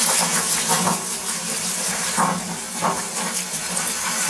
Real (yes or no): no